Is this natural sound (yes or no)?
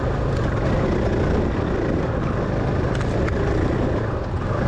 yes